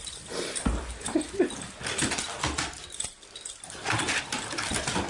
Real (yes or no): yes